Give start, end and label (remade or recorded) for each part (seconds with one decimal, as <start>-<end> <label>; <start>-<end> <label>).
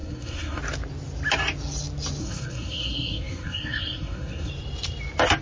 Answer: 0.0-0.6 remade; 0.6-2.2 recorded; 2.2-4.5 remade; 4.5-5.4 recorded